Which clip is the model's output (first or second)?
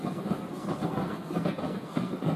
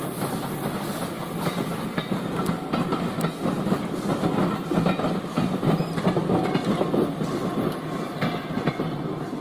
first